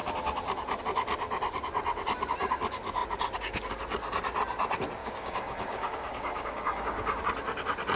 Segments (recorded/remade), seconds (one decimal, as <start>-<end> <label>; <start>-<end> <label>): 0.0-5.0 recorded; 5.0-7.2 remade; 7.2-8.0 recorded